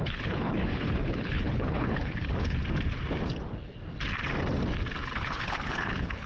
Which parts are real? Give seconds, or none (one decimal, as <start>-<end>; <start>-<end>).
2.6-5.0